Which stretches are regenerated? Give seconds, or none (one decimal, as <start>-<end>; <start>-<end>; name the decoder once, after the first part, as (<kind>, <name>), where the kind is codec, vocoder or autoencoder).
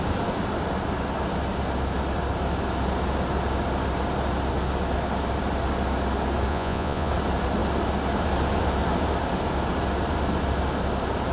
6.5-7.1 (vocoder, Vocos)